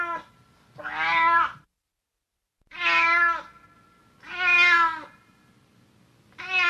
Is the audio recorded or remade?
recorded